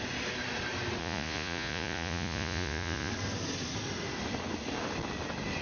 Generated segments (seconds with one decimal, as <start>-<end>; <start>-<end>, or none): 1.0-3.1